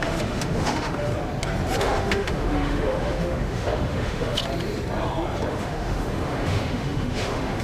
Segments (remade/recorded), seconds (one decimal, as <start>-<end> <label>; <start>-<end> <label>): 0.0-1.1 remade; 1.1-1.8 recorded; 1.8-4.4 remade; 4.4-5.5 recorded; 5.5-7.6 remade